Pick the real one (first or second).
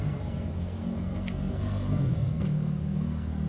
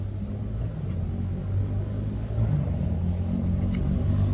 second